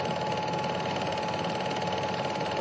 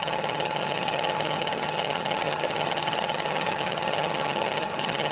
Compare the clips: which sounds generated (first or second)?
second